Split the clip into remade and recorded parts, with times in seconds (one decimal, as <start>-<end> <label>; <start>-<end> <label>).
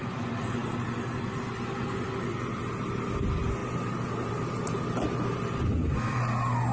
0.0-5.7 recorded; 5.7-6.2 remade; 6.2-6.7 recorded